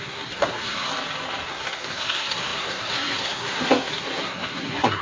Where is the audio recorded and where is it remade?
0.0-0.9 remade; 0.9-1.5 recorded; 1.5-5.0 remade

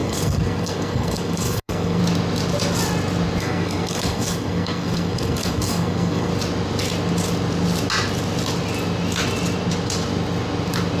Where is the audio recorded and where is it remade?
0.0-2.0 remade; 2.0-3.4 recorded; 3.4-6.3 remade; 6.3-11.0 recorded

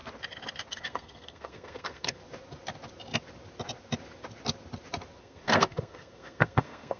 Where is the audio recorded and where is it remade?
0.0-0.7 recorded; 0.7-2.2 remade; 2.2-5.2 recorded; 5.2-7.0 remade

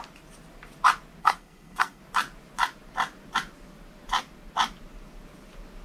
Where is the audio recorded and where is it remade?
0.0-1.2 recorded; 1.2-2.0 remade; 2.0-5.8 recorded

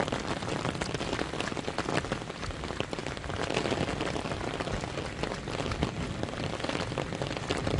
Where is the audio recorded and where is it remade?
0.0-7.8 recorded

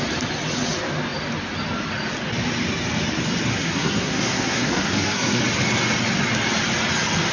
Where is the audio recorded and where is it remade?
0.0-3.5 recorded; 3.5-5.4 remade; 5.4-7.3 recorded